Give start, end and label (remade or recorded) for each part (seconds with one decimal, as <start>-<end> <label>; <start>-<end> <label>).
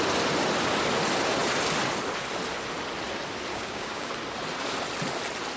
0.0-3.5 recorded; 3.5-4.1 remade; 4.1-5.6 recorded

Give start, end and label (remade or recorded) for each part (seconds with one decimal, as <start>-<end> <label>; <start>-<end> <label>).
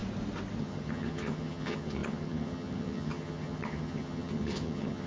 0.0-0.6 recorded; 0.6-5.1 remade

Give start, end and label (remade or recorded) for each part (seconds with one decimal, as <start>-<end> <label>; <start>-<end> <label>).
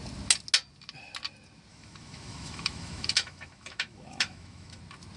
0.0-1.7 recorded; 1.7-4.8 remade; 4.8-5.2 recorded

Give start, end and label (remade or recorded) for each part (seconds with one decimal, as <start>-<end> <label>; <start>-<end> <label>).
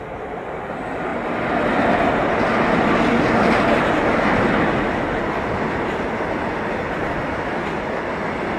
0.0-8.6 recorded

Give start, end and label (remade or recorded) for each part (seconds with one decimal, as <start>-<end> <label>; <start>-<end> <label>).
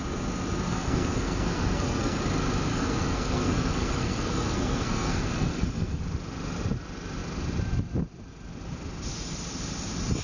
0.0-0.7 recorded; 0.7-2.2 remade; 2.2-2.7 recorded; 2.7-6.0 remade; 6.0-10.2 recorded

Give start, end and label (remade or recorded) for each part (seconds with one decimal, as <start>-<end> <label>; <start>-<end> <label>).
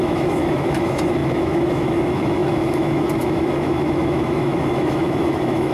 0.0-5.7 remade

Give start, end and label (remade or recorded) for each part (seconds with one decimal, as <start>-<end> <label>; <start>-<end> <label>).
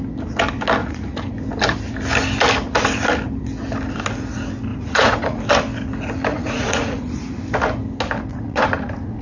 0.0-0.8 recorded; 0.8-1.3 remade; 1.3-4.7 recorded; 4.7-5.4 remade; 5.4-6.3 recorded; 6.3-7.4 remade; 7.4-8.3 recorded; 8.3-9.2 remade